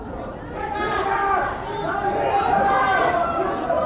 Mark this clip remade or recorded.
recorded